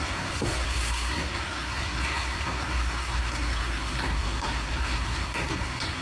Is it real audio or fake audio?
fake